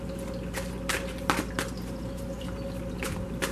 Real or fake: real